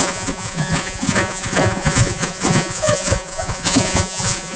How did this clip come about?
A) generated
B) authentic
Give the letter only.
A